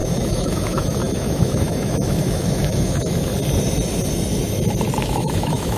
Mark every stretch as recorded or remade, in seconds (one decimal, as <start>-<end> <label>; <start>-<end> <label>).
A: 0.0-3.3 remade; 3.3-5.0 recorded; 5.0-5.8 remade